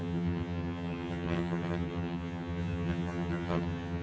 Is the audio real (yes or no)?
no